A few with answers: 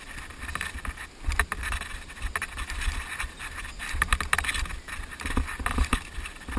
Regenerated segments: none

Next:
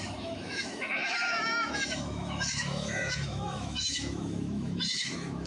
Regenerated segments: 0.0-5.5

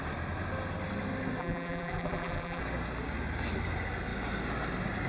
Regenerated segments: 1.4-2.6

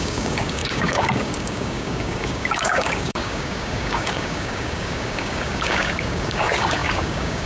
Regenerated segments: 0.0-7.5

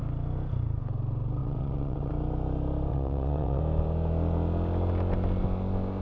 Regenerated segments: 1.4-2.1; 2.9-3.6